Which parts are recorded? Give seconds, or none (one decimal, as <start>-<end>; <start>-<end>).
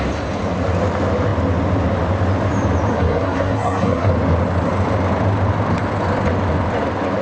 0.0-2.9; 4.1-7.2